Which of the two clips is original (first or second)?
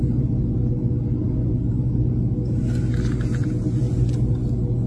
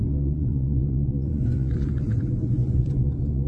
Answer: first